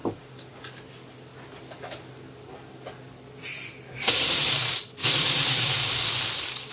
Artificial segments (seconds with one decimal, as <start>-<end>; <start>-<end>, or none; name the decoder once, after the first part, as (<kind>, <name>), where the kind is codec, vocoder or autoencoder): 0.0-0.6 (codec, DAC)